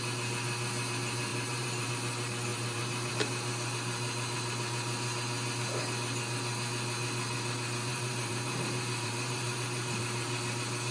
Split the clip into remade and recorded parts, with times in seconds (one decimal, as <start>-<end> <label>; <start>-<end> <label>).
0.0-1.3 recorded; 1.3-1.9 remade; 1.9-2.5 recorded; 2.5-3.1 remade; 3.1-7.9 recorded; 7.9-10.0 remade; 10.0-10.9 recorded